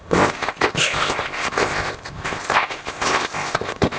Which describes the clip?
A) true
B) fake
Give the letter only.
B